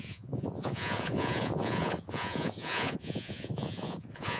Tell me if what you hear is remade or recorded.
remade